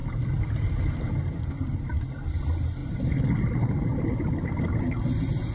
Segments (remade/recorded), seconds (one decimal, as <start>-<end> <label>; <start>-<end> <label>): 0.0-5.5 recorded